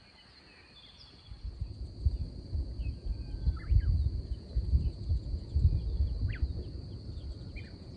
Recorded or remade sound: recorded